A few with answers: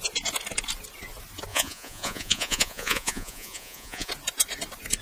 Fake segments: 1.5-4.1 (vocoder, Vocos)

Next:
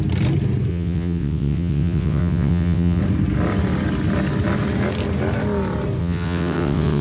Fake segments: 0.7-3.0 (vocoder, WaveNeXt); 6.0-7.0

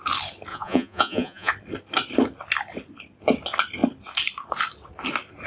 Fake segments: 0.5-1.5 (vocoder, Vocos)